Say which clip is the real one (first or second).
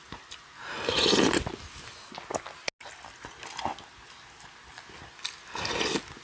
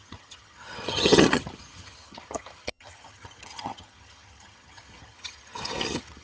first